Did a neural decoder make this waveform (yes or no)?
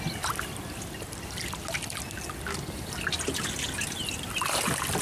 no